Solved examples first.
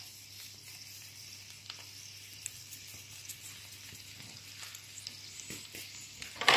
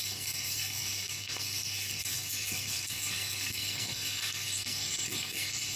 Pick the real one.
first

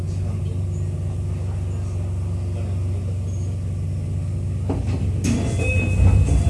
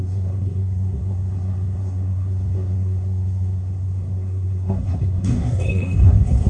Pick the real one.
first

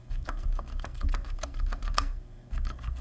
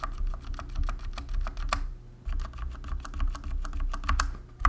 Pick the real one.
second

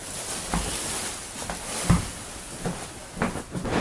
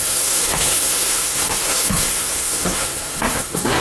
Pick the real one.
first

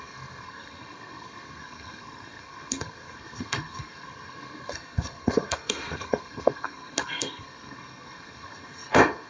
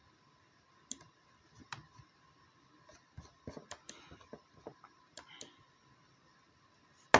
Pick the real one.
second